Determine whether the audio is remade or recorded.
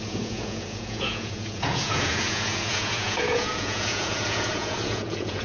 remade